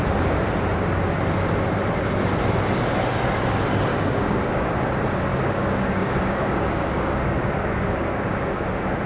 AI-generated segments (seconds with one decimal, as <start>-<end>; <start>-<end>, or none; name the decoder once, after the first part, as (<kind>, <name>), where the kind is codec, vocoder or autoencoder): 3.9-4.7 (codec, DAC); 5.3-9.1